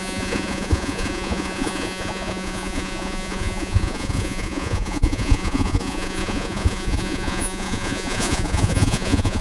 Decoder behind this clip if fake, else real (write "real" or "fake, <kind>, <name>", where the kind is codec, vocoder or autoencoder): fake, vocoder, Vocos